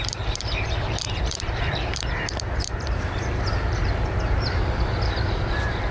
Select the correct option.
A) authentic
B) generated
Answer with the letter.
B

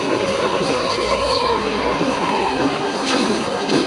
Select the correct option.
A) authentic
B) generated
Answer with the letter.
B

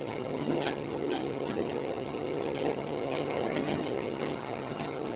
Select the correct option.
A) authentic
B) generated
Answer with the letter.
B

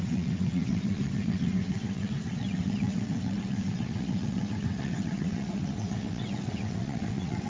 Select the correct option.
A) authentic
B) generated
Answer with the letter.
B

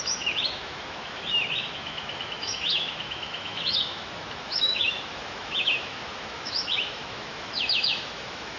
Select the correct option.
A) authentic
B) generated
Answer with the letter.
B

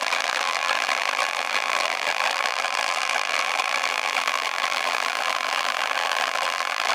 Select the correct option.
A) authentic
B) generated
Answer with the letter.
B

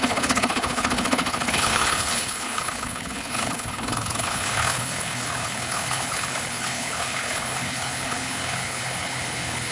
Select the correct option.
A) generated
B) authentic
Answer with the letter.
A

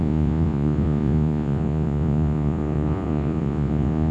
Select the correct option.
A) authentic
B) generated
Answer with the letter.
B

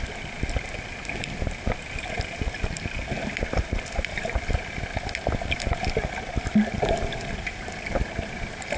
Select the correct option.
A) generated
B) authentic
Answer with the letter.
B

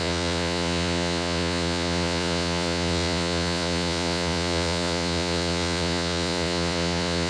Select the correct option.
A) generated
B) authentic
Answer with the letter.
A